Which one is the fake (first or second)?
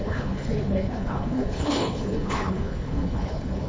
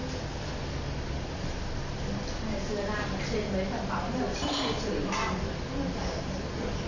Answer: first